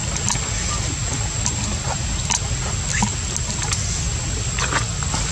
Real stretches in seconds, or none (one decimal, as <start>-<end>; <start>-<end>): 0.0-5.3

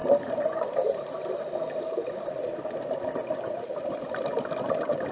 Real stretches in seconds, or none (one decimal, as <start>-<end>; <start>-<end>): 0.0-5.1

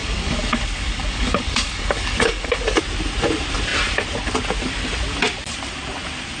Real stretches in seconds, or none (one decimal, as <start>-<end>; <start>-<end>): 2.8-6.4

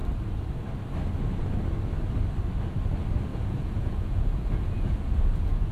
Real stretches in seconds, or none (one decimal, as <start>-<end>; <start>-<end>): 0.0-3.3